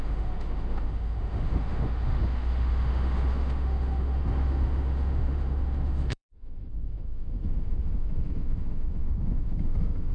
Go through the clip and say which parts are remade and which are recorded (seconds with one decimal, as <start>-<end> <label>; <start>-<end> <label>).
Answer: 0.0-10.1 remade